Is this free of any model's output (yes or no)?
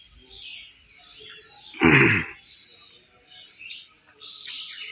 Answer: yes